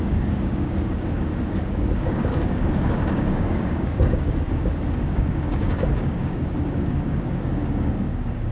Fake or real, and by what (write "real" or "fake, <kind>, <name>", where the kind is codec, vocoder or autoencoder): fake, codec, DAC